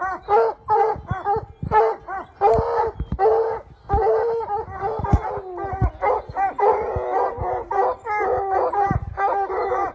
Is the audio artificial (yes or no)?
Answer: no